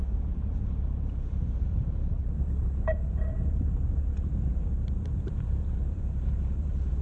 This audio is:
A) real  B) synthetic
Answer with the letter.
B